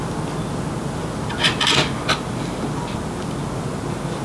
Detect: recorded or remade recorded